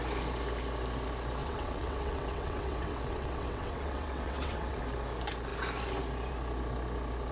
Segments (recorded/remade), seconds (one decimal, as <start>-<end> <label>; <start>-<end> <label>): 0.0-1.4 recorded; 1.4-4.8 remade; 4.8-7.3 recorded